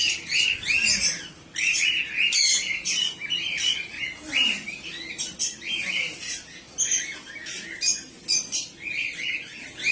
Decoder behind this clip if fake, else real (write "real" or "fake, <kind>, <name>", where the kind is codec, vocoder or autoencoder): real